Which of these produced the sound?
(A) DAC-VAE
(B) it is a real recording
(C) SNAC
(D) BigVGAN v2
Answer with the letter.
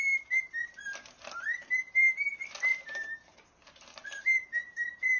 D